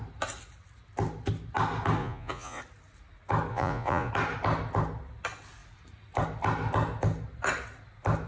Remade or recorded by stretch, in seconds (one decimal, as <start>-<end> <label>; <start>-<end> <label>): 0.0-2.0 recorded; 2.0-2.6 remade; 2.6-3.5 recorded; 3.5-4.1 remade; 4.1-8.3 recorded